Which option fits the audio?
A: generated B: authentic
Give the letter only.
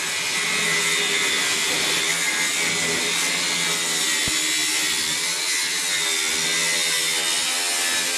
B